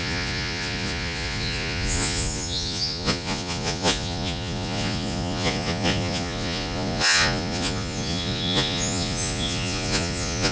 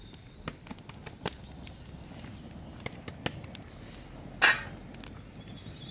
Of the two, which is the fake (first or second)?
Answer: first